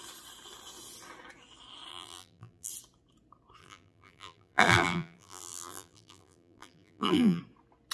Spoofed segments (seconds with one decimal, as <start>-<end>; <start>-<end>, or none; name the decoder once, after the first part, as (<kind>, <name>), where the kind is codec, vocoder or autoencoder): 1.9-2.7 (vocoder, BigVGAN v2); 3.6-7.4